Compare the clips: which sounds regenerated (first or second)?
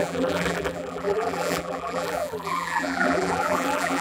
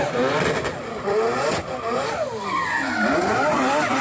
first